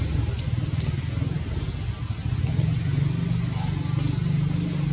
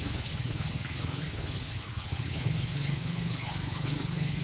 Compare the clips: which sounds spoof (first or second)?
second